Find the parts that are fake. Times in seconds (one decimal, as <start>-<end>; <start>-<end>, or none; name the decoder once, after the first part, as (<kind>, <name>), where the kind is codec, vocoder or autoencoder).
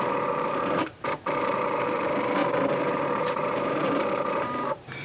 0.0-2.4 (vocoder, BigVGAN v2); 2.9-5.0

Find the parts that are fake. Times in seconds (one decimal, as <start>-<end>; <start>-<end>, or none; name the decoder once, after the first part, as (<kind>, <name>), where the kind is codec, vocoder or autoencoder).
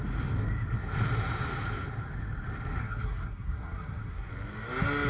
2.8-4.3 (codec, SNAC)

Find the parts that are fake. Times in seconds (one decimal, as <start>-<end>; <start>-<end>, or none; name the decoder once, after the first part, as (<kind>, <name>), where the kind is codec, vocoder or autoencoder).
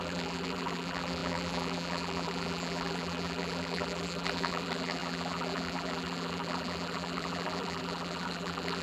0.0-8.8 (vocoder, BigVGAN v2)